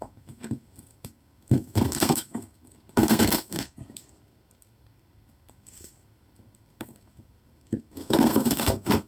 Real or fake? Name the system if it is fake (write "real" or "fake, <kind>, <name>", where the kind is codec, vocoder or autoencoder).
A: fake, codec, SNAC